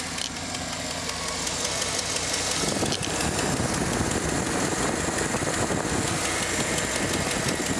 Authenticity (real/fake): real